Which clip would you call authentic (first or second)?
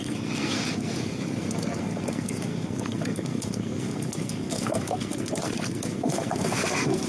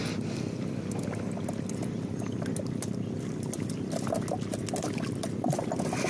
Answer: second